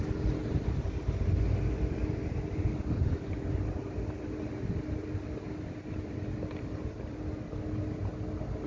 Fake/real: real